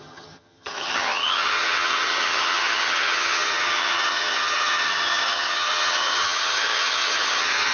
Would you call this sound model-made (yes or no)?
yes